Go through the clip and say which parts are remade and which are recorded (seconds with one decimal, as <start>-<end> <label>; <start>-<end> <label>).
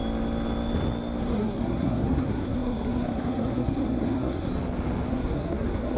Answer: 0.0-1.2 recorded; 1.2-4.5 remade; 4.5-5.1 recorded; 5.1-6.0 remade